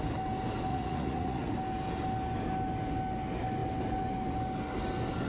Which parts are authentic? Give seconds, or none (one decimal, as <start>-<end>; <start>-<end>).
0.0-0.7; 1.5-5.3

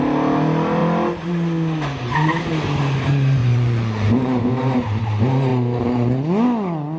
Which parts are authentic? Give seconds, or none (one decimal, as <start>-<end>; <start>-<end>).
0.0-3.4; 4.4-7.0

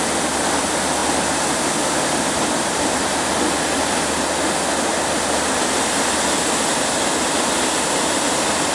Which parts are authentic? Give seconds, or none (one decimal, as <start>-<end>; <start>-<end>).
0.0-8.7

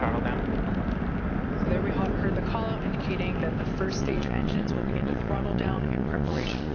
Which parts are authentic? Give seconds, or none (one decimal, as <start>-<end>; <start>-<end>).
0.0-4.0